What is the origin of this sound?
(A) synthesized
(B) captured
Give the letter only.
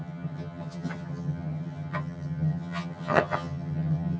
A